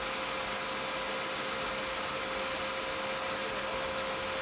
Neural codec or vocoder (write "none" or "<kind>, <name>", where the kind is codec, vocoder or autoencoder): none